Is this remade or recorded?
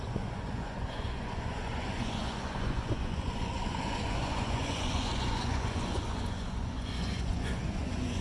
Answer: remade